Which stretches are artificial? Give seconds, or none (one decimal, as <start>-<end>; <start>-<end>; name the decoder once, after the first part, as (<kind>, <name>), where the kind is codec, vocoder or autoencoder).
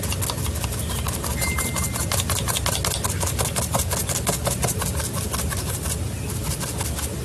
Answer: none